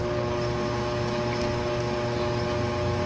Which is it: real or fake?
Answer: real